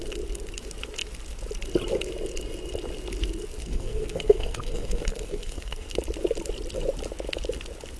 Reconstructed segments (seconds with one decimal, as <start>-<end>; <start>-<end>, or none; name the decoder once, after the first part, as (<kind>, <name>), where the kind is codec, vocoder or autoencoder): 3.6-6.0 (codec, SNAC)